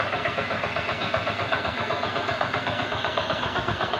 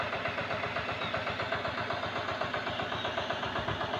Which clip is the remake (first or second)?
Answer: first